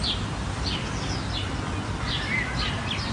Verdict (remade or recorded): recorded